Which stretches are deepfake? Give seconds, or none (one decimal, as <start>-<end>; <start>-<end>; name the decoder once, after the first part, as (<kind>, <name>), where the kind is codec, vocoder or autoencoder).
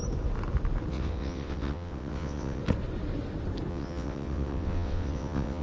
0.9-2.6 (vocoder, WaveNeXt); 3.7-5.6